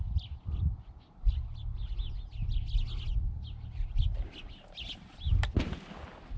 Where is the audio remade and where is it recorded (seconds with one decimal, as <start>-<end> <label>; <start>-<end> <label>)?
0.0-6.4 recorded